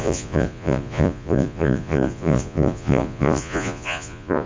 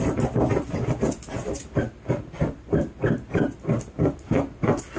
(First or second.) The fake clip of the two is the first